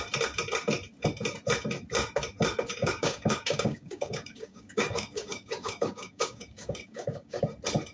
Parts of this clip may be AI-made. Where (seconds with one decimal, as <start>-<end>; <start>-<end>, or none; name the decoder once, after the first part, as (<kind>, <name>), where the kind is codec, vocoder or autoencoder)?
2.7-7.4 (codec, DAC)